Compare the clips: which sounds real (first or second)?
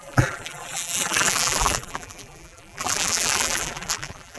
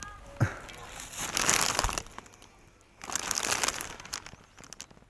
second